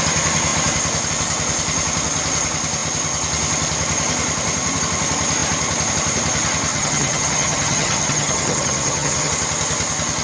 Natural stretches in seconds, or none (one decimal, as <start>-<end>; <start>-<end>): 0.0-6.7; 9.3-10.2